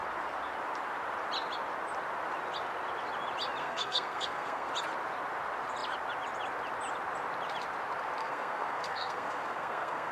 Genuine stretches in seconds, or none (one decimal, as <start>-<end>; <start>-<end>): 0.0-3.6; 4.7-8.2

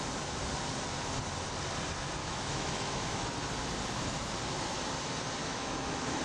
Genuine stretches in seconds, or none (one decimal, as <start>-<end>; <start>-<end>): 0.0-2.2; 3.3-5.4